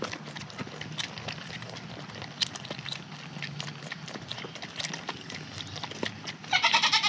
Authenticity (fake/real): real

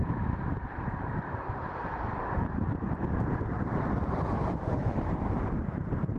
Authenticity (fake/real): fake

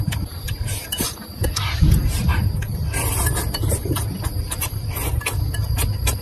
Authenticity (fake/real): real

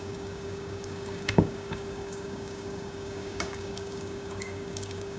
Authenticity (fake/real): fake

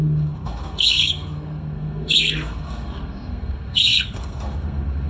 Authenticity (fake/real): fake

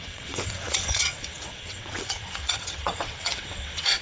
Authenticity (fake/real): fake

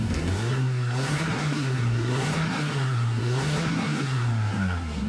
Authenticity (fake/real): fake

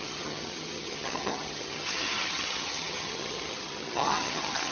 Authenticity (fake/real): fake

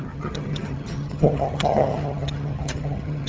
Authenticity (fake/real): fake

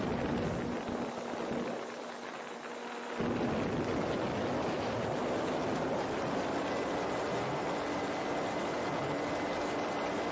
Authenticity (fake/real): real